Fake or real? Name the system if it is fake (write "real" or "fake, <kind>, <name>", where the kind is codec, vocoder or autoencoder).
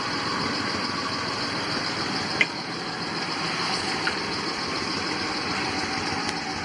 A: real